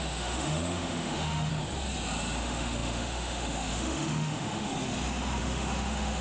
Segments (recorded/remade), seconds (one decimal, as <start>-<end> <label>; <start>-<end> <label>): 0.0-1.5 remade; 1.5-2.4 recorded; 2.4-4.7 remade; 4.7-5.4 recorded; 5.4-6.2 remade